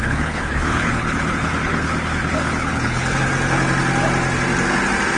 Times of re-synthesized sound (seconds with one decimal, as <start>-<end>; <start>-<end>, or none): 0.0-3.3